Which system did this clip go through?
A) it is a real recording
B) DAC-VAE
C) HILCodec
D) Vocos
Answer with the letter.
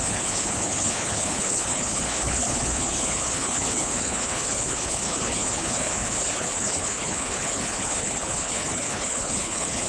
C